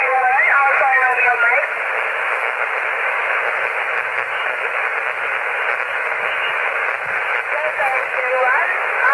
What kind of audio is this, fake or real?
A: fake